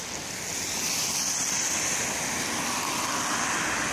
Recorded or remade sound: recorded